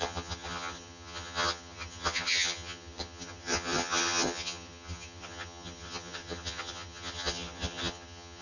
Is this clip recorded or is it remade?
remade